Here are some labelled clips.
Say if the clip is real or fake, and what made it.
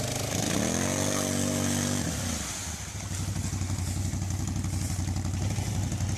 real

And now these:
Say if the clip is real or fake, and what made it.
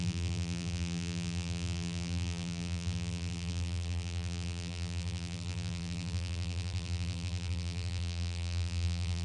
fake, vocoder, BigVGAN v2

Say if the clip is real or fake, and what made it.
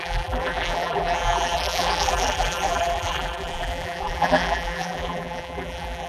fake, vocoder, BigVGAN v2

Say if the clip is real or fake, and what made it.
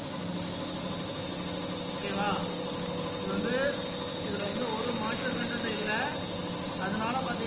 real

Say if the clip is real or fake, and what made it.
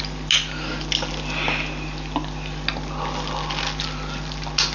real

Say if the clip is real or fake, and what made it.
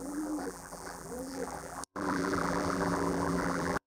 fake, vocoder, BigVGAN v2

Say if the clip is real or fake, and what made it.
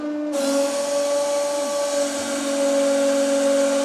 real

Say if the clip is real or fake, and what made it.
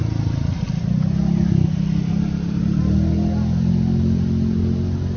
real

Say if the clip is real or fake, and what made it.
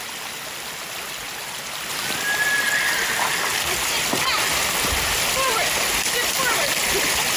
real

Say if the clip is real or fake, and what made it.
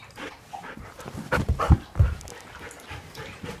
fake, vocoder, BigVGAN v2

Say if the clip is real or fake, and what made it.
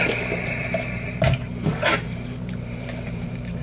fake, vocoder, BigVGAN v2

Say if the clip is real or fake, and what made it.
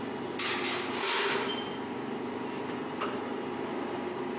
real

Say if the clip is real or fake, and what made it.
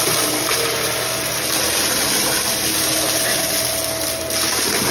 real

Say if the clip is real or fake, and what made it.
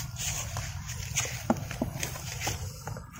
fake, vocoder, BigVGAN v2